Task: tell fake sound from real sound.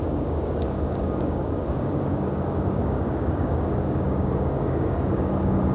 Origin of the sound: fake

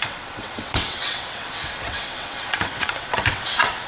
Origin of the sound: fake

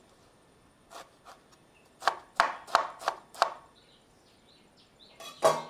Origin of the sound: real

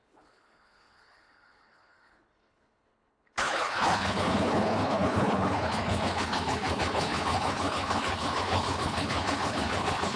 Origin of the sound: fake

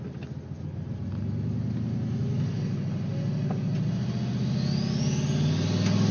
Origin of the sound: real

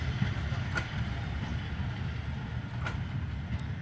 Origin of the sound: real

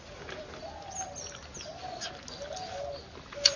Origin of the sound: real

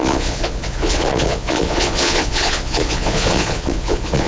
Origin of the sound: fake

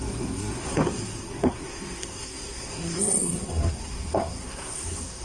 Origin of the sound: fake